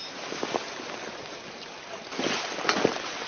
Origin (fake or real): real